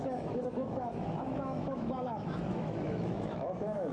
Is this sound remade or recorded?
remade